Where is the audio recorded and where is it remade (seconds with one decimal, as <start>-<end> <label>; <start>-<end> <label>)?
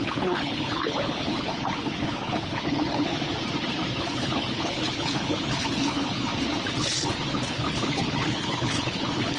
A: 0.0-3.1 remade; 3.1-4.0 recorded; 4.0-6.3 remade; 6.3-7.3 recorded; 7.3-9.4 remade